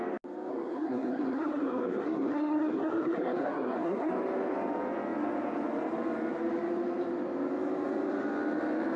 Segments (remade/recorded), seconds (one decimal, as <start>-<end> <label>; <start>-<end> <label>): 0.0-0.5 recorded; 0.5-4.1 remade; 4.1-9.0 recorded